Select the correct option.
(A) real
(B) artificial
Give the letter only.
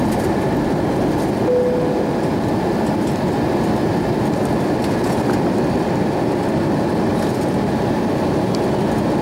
A